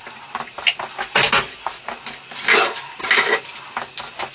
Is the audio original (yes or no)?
yes